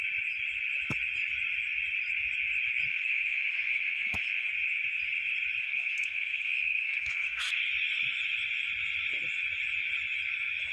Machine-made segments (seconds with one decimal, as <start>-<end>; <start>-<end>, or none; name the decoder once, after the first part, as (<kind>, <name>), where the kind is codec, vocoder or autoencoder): 2.9-4.5 (codec, SNAC); 5.6-7.6